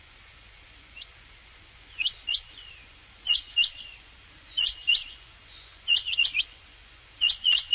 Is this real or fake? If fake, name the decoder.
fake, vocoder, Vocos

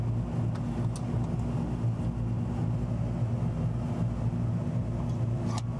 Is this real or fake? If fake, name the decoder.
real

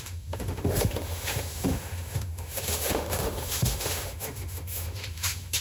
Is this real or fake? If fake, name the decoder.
fake, autoencoder, DAC-VAE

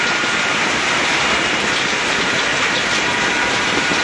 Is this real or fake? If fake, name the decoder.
fake, vocoder, BigVGAN v2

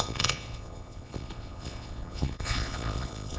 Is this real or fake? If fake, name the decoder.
fake, vocoder, Vocos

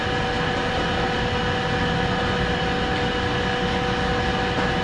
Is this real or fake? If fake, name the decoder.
real